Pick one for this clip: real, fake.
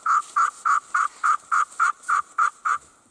fake